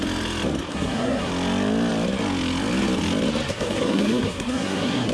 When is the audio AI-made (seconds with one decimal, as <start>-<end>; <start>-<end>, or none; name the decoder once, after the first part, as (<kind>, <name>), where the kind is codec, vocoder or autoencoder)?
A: 0.7-1.3 (codec, SNAC); 3.5-5.1